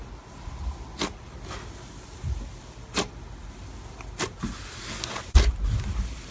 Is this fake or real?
real